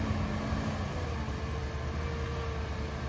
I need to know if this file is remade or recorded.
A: recorded